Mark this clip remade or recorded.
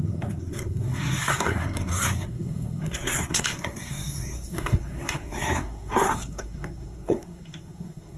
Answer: remade